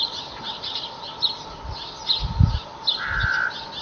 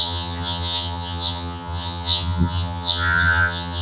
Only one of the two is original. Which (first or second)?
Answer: first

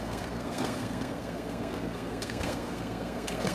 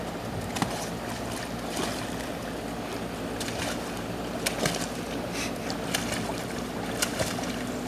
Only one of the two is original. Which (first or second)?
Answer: second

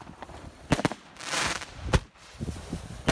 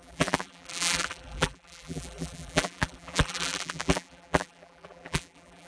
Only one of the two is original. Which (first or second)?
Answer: first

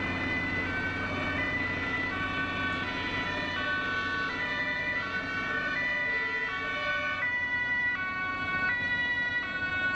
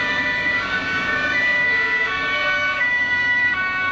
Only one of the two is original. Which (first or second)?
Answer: first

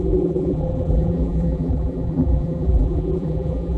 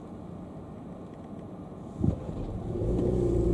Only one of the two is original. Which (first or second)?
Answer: second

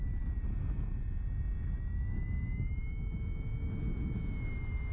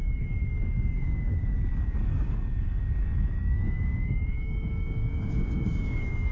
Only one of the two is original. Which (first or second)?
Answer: first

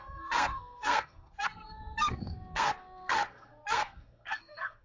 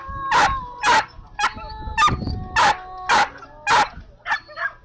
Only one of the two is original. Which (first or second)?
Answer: second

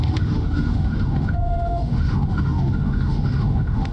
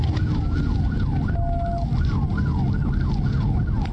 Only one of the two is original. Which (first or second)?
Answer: second